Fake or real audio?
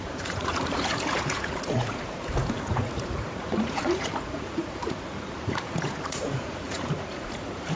fake